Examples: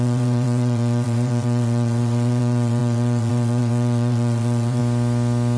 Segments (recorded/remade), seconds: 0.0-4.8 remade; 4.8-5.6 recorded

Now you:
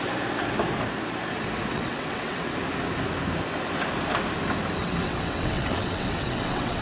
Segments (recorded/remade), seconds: 0.0-1.7 recorded; 1.7-2.5 remade; 2.5-4.8 recorded; 4.8-6.8 remade

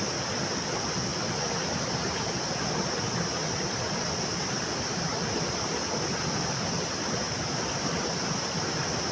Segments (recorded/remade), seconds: 0.0-9.1 recorded

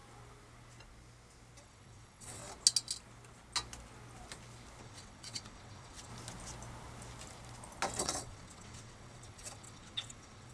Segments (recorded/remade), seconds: 0.0-1.6 recorded; 1.6-2.4 remade; 2.4-4.8 recorded; 4.8-6.1 remade; 6.1-8.0 recorded; 8.0-10.5 remade